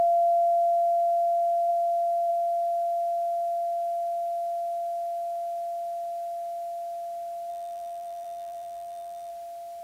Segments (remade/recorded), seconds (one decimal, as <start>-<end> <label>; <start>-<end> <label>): 0.0-7.5 recorded; 7.5-9.3 remade; 9.3-9.8 recorded